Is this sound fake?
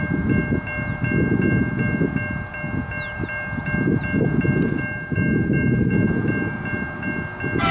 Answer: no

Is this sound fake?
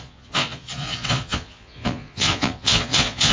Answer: yes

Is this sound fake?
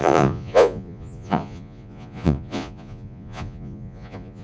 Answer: yes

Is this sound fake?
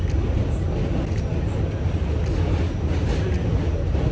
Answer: no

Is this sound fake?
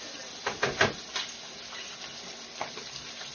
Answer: no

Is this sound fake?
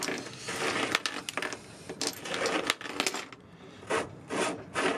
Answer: no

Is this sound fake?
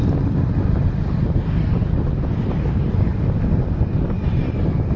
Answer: no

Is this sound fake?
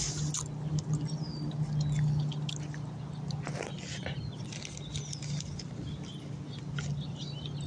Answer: no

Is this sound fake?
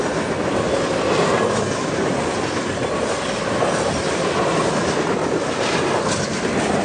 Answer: no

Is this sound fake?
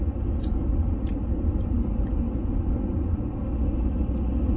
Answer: no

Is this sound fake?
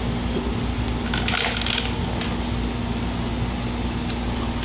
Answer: no